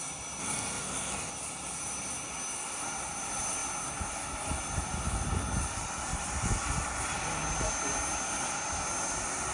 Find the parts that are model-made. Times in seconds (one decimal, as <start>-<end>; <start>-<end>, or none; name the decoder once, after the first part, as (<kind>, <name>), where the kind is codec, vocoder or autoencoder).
0.4-1.3 (codec, SNAC)